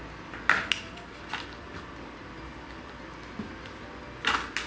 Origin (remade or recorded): recorded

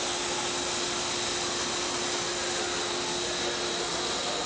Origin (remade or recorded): recorded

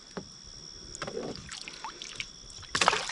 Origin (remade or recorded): recorded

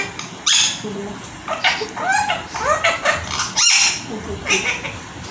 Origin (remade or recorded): recorded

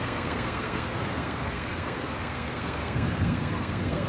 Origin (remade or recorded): remade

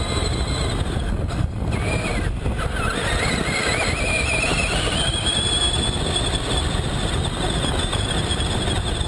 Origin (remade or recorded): recorded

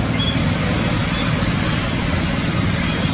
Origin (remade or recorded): recorded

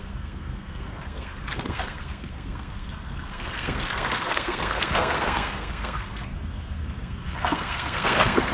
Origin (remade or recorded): remade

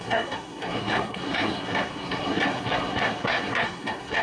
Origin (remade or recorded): remade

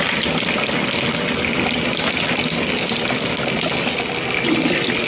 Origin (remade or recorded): recorded